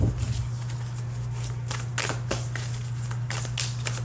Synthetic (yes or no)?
no